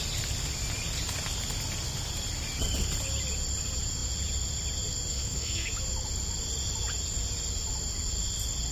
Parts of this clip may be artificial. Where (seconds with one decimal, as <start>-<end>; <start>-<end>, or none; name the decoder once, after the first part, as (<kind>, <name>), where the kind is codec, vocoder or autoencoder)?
5.1-5.7 (codec, SNAC)